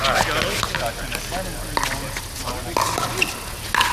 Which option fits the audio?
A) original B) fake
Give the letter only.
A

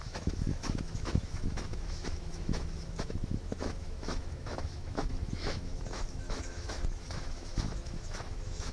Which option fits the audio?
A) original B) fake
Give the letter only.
B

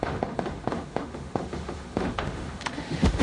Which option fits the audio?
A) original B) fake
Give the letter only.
B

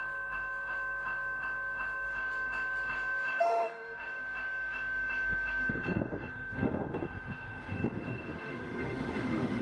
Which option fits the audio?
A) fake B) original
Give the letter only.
A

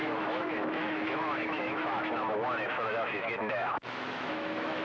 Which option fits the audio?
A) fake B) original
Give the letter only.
A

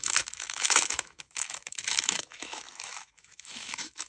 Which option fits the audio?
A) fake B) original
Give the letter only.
A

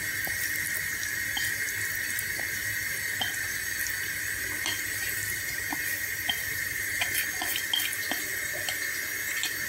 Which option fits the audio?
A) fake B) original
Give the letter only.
B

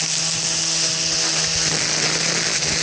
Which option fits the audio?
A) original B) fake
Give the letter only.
A